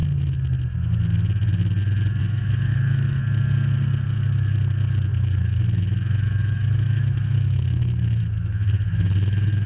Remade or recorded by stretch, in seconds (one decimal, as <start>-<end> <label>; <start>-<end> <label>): 0.0-2.2 recorded; 2.2-3.2 remade; 3.2-5.1 recorded; 5.1-9.7 remade

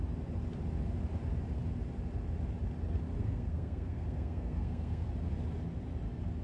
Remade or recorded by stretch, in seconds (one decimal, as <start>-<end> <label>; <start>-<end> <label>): 0.0-3.2 recorded; 3.2-5.1 remade; 5.1-6.4 recorded

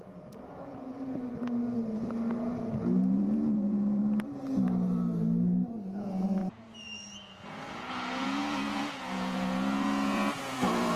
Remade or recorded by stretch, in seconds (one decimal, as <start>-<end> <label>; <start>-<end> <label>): 0.0-1.3 remade; 1.3-2.4 recorded; 2.4-4.0 remade; 4.0-6.0 recorded; 6.0-11.0 remade

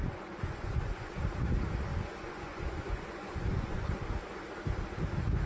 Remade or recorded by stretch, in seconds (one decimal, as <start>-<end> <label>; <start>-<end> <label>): 0.0-1.1 remade; 1.1-1.9 recorded; 1.9-3.9 remade; 3.9-5.5 recorded

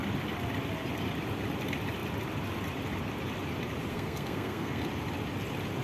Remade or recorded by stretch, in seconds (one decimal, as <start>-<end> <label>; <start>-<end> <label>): 0.0-3.9 recorded; 3.9-4.8 remade; 4.8-5.8 recorded